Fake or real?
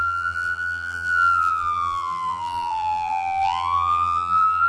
fake